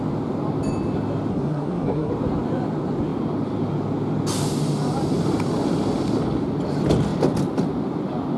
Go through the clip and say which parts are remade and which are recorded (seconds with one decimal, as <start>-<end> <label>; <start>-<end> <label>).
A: 0.0-1.3 recorded; 1.3-2.1 remade; 2.1-8.4 recorded